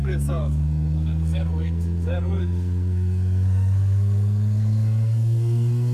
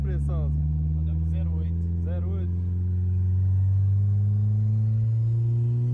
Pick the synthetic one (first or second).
first